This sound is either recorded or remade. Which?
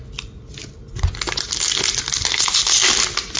recorded